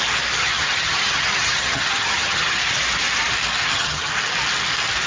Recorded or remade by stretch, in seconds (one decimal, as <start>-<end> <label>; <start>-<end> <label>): 0.0-0.4 recorded; 0.4-2.6 remade; 2.6-3.6 recorded; 3.6-4.1 remade; 4.1-5.1 recorded